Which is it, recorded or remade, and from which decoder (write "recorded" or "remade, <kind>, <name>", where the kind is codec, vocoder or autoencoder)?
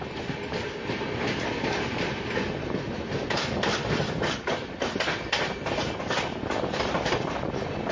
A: recorded